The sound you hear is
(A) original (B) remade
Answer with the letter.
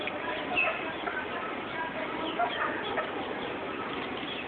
A